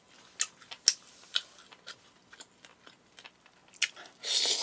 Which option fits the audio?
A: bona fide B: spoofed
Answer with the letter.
A